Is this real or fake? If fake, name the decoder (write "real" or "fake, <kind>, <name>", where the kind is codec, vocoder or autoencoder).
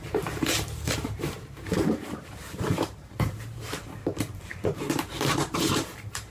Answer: fake, vocoder, BigVGAN v2